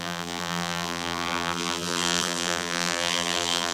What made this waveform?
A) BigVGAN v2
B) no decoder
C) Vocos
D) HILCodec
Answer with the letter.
A